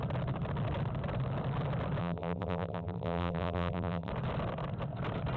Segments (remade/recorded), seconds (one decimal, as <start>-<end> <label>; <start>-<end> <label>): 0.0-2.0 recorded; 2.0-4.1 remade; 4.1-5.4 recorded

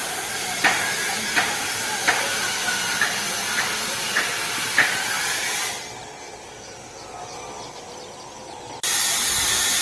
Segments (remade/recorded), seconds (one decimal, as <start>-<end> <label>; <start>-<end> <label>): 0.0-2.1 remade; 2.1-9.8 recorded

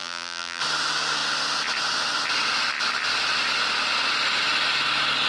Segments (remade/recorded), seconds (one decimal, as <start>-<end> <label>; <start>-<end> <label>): 0.0-0.6 remade; 0.6-5.3 recorded

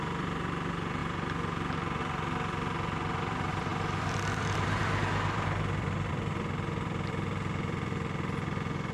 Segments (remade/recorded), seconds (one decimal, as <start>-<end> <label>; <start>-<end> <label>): 0.0-8.9 remade

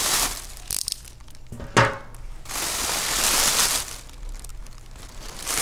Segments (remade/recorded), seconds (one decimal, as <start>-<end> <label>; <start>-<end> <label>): 0.0-5.6 recorded

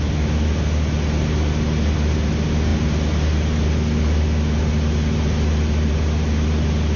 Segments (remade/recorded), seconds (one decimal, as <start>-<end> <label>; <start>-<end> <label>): 0.0-7.0 recorded

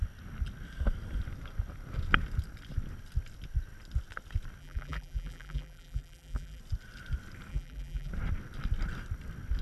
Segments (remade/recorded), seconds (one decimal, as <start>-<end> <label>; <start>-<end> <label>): 0.0-4.6 recorded; 4.6-6.6 remade; 6.6-7.5 recorded; 7.5-8.1 remade; 8.1-9.6 recorded

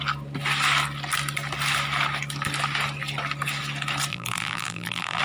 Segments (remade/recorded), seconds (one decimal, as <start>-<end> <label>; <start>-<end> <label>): 0.0-4.1 recorded; 4.1-5.2 remade